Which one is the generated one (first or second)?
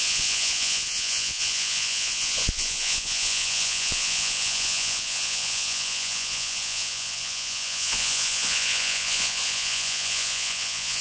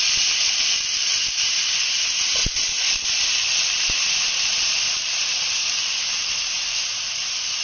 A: first